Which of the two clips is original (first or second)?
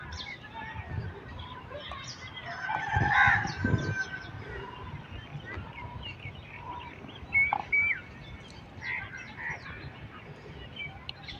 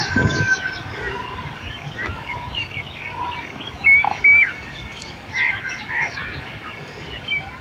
first